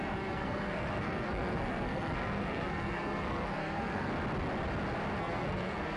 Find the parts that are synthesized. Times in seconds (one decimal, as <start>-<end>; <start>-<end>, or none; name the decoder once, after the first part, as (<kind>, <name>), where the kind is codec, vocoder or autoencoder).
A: 0.0-4.1 (codec, SNAC); 5.2-6.0